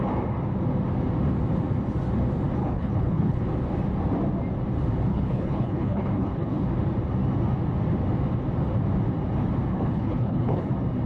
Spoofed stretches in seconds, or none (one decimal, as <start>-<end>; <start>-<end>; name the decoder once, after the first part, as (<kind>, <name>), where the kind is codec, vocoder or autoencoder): 2.6-3.4 (codec, HILCodec); 5.1-6.7; 9.7-10.7